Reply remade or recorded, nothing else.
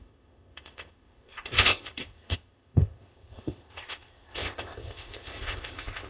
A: remade